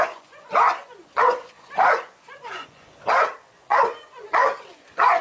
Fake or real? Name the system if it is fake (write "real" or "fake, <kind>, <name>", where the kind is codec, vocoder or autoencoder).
fake, vocoder, Vocos